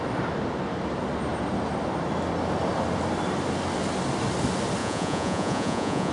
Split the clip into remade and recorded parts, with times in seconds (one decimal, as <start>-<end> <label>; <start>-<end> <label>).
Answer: 0.0-4.8 recorded; 4.8-6.1 remade

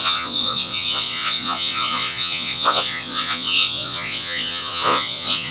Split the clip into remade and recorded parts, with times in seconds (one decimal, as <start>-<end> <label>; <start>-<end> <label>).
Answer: 0.0-5.5 remade

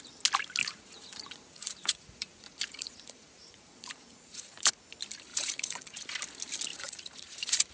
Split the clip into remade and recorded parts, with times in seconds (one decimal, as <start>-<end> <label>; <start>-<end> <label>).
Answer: 0.0-0.6 recorded; 0.6-4.7 remade; 4.7-5.3 recorded; 5.3-6.0 remade; 6.0-6.7 recorded; 6.7-7.7 remade

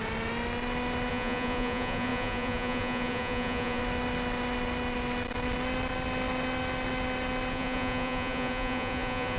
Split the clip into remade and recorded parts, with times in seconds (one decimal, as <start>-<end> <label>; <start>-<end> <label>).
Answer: 0.0-1.1 recorded; 1.1-3.8 remade; 3.8-7.5 recorded; 7.5-9.4 remade

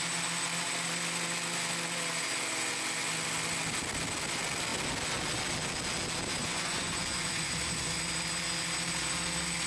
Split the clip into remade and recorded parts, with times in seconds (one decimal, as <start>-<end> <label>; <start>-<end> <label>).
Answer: 0.0-6.4 recorded; 6.4-7.9 remade; 7.9-9.7 recorded